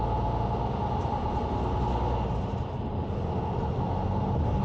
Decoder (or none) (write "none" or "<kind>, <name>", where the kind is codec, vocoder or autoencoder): none